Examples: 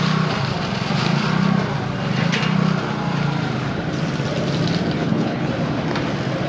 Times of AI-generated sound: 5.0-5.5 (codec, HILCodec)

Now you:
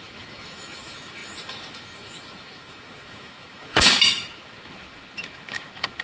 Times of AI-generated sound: 0.0-6.0 (autoencoder, DAC-VAE)

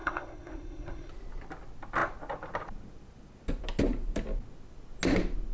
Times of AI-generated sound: 0.0-1.1 (codec, SNAC)